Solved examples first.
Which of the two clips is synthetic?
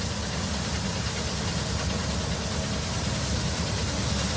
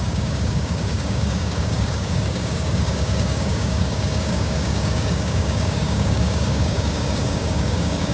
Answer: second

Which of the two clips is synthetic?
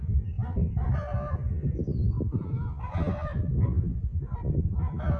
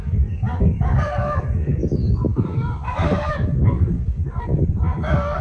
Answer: second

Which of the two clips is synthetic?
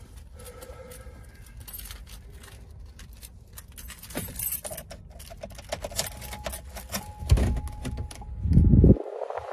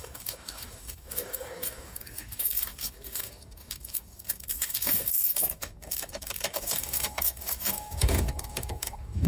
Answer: second